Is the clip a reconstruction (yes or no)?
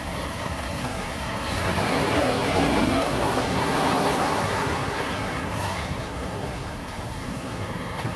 yes